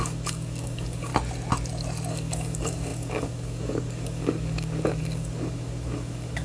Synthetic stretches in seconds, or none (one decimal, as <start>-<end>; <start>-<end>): 0.0-1.1; 2.1-6.4